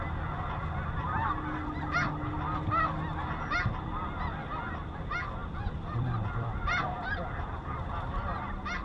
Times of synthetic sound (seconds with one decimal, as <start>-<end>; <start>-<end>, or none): 5.4-7.9